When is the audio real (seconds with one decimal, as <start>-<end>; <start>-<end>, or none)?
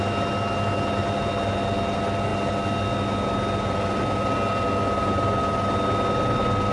0.0-6.7